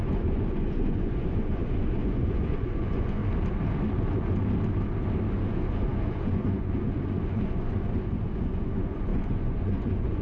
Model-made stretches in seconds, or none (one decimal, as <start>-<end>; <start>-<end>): 0.0-3.2; 5.3-10.2